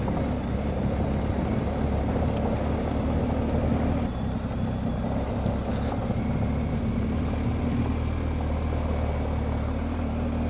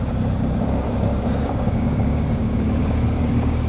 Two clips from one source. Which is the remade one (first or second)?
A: second